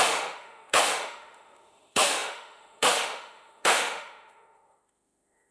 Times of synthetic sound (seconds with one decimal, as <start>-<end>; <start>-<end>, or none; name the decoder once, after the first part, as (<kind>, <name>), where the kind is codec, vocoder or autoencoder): 0.0-5.5 (autoencoder, DAC-VAE)